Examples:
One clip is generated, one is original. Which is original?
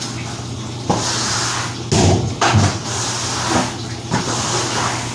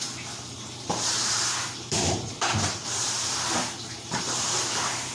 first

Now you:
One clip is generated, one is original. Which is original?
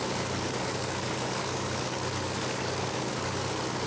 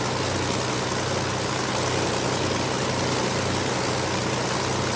second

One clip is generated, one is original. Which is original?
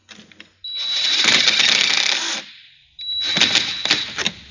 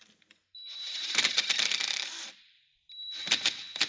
first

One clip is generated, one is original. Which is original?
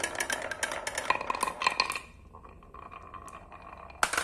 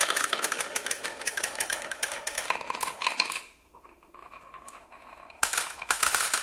first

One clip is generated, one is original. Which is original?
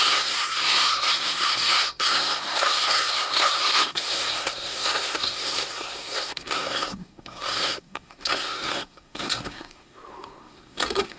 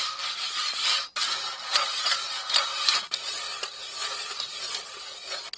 second